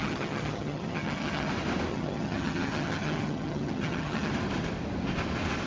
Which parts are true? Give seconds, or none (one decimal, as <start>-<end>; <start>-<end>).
1.5-1.9; 4.3-5.7